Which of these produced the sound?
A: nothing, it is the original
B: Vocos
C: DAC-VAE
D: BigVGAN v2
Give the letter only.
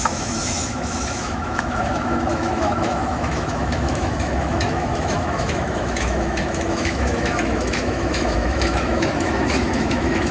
C